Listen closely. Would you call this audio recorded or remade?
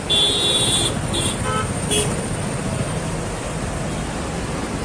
recorded